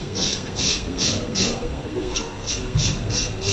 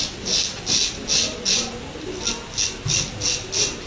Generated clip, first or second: first